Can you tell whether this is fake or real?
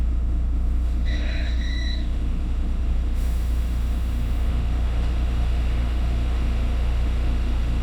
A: fake